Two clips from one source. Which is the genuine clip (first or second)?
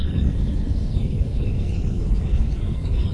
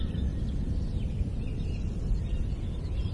second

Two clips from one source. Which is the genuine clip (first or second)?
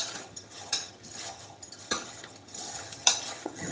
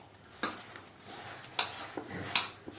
second